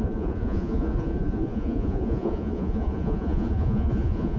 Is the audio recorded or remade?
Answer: remade